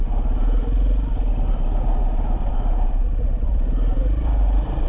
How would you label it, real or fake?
real